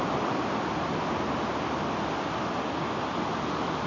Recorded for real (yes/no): yes